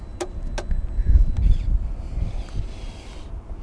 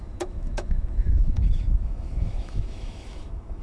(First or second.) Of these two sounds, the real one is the first